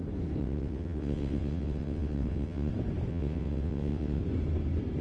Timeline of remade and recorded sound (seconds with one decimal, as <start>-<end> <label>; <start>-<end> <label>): 0.0-0.4 recorded; 0.4-2.7 remade; 2.7-3.1 recorded; 3.1-4.2 remade; 4.2-5.0 recorded